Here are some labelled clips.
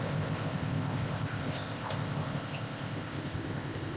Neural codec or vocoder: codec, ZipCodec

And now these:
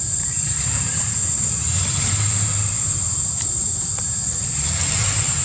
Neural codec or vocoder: vocoder, BigVGAN v2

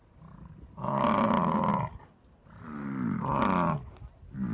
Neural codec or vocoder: none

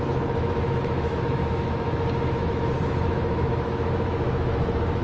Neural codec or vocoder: autoencoder, DAC-VAE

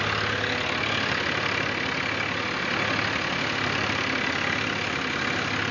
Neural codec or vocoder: none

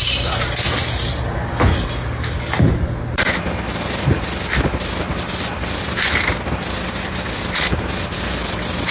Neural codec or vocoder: none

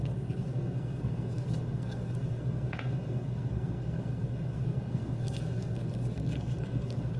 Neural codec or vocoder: codec, SNAC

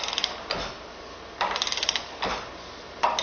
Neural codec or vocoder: none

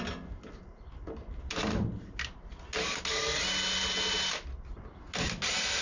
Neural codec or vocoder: none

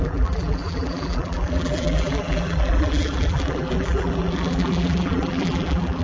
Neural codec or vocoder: vocoder, BigVGAN v2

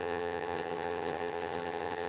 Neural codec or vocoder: vocoder, HiFi-GAN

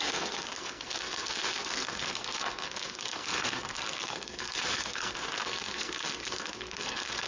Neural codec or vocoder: codec, SNAC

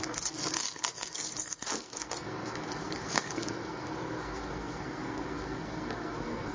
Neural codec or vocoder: codec, SNAC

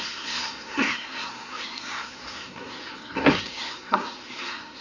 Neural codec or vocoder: codec, SNAC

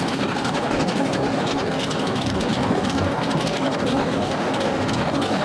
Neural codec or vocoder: codec, DAC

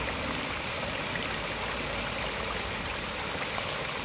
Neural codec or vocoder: none